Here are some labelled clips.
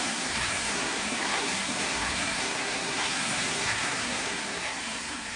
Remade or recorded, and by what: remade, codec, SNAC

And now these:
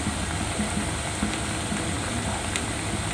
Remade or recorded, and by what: recorded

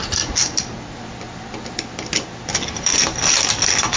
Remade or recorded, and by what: recorded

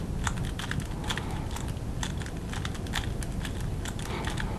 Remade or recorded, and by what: recorded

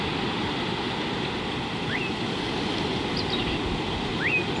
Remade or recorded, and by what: recorded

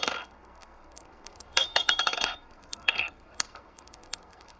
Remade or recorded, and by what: remade, codec, SNAC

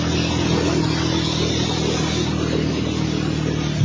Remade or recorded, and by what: recorded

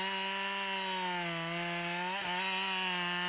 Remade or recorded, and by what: recorded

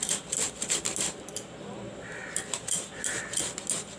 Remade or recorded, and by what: recorded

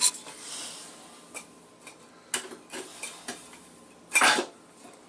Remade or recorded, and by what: recorded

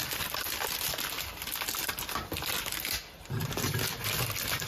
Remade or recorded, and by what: recorded